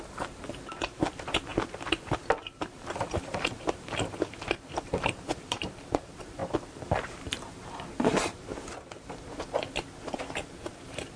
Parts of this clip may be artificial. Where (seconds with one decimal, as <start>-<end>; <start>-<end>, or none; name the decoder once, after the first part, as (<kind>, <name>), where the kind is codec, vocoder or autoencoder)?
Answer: 0.0-1.5 (vocoder, BigVGAN v2); 2.3-6.4; 7.1-8.5; 10.3-11.2